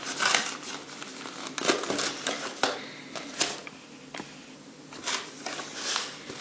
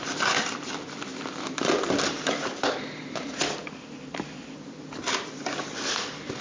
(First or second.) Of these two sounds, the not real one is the second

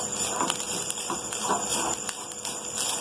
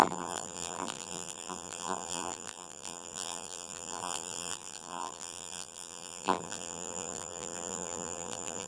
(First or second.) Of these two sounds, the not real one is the second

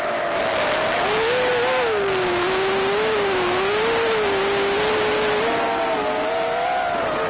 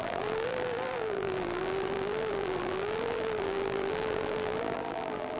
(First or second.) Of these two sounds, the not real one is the second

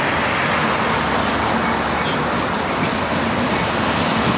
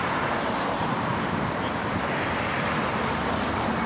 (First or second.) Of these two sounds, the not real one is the second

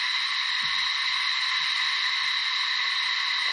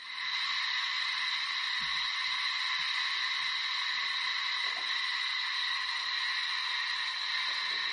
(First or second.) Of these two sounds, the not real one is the first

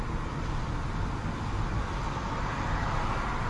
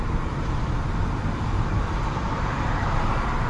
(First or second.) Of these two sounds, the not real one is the second